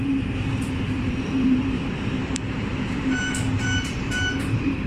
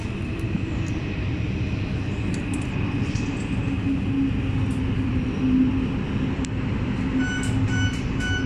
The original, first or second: second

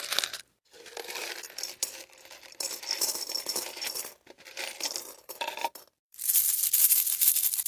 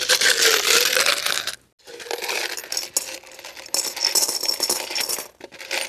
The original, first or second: second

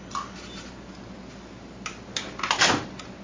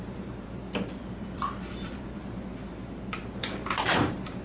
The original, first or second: first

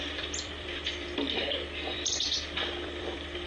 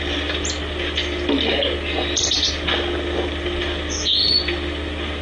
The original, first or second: second